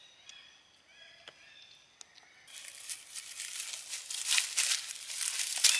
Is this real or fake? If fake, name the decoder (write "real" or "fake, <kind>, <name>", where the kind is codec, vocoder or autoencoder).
real